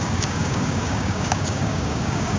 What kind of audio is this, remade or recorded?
remade